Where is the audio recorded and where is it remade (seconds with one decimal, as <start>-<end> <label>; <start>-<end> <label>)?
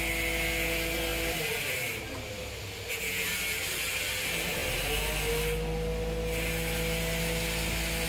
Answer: 0.0-8.1 recorded